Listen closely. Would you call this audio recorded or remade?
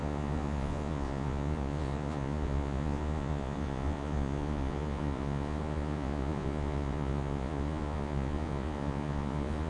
remade